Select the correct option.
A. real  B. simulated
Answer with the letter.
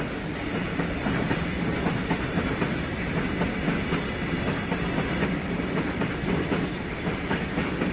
A